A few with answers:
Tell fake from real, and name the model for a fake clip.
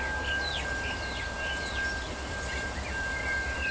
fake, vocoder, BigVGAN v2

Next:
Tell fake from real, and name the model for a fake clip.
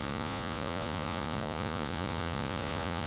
fake, vocoder, Vocos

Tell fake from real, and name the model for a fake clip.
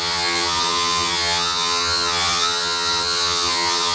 fake, vocoder, HiFi-GAN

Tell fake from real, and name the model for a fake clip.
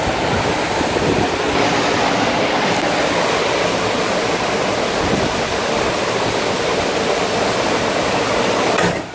real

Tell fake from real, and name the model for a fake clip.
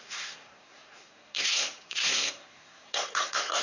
fake, codec, SNAC